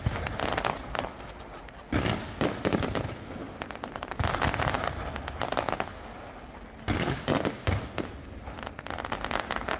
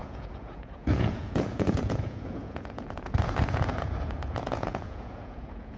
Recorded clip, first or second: first